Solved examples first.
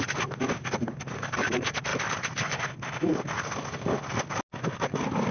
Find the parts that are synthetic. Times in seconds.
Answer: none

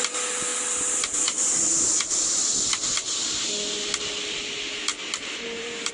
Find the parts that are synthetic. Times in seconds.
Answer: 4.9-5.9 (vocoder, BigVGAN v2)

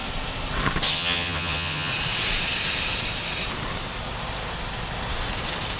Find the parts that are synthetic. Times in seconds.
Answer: 0.9-1.9 (vocoder, HiFi-GAN)

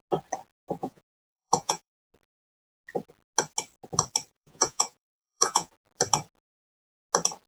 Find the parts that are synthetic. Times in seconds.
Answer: 0.8-1.9 (vocoder, Vocos); 4.3-5.7